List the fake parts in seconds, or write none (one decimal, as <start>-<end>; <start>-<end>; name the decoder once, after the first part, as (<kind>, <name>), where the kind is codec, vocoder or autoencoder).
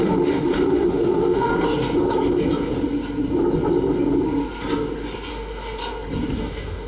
0.0-1.5 (autoencoder, DAC-VAE); 5.3-5.8; 6.4-6.9